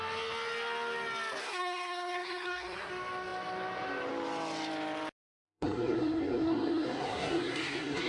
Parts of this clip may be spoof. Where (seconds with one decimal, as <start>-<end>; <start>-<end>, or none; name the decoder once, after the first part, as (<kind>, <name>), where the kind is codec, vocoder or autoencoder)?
1.4-2.9 (codec, SNAC); 5.3-8.1